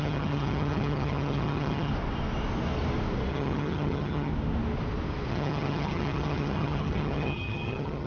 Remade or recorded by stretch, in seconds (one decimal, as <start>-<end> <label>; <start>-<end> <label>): 0.0-1.9 remade; 1.9-3.3 recorded; 3.3-4.3 remade; 4.3-5.3 recorded; 5.3-8.1 remade